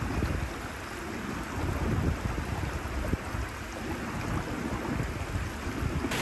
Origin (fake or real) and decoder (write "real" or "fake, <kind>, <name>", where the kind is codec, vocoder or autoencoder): real